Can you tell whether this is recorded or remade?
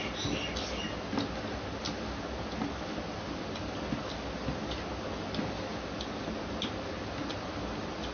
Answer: recorded